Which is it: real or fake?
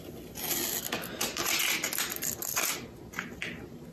real